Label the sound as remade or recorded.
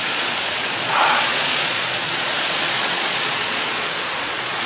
remade